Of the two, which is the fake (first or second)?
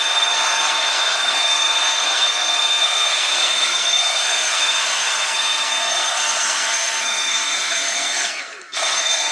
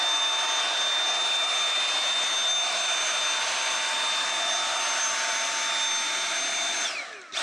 first